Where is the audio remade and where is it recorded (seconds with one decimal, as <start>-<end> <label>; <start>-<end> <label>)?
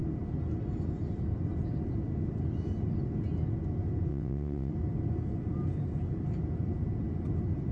0.0-4.1 recorded; 4.1-4.7 remade; 4.7-7.7 recorded